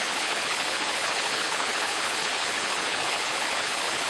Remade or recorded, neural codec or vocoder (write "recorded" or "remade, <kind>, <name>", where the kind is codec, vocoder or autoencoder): remade, codec, HILCodec